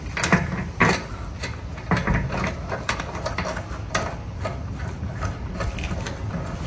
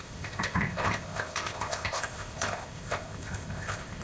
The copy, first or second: second